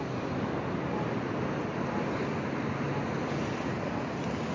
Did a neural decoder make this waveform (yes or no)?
no